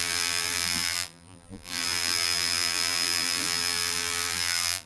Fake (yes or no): yes